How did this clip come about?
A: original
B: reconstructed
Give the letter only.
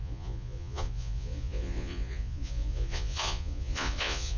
B